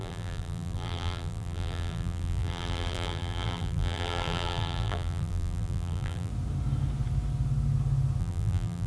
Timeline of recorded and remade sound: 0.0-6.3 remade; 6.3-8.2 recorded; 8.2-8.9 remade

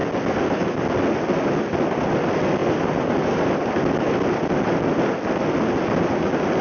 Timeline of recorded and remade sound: 0.0-6.6 recorded

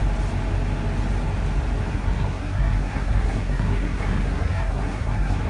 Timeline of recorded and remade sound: 0.0-1.9 recorded; 1.9-5.5 remade

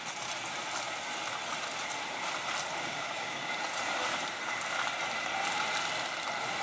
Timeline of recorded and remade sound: 0.0-2.9 recorded; 2.9-3.5 remade; 3.5-6.6 recorded

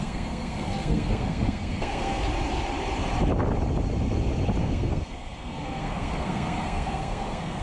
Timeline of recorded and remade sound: 0.0-2.2 remade; 2.2-4.6 recorded; 4.6-7.6 remade

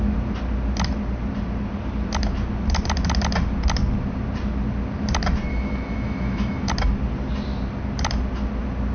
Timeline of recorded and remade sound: 0.0-5.5 recorded; 5.5-6.7 remade; 6.7-8.9 recorded

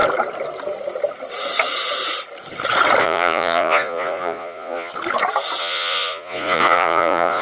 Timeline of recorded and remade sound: 0.0-3.0 recorded; 3.0-4.9 remade; 4.9-5.6 recorded; 5.6-7.4 remade